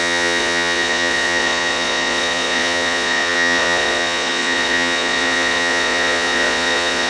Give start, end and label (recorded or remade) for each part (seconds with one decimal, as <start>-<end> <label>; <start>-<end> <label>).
0.0-7.1 remade